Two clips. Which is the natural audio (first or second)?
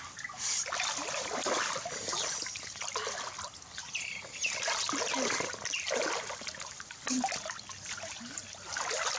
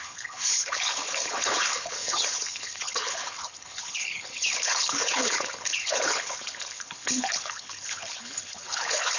first